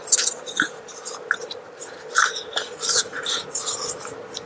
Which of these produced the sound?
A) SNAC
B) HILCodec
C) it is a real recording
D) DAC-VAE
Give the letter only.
C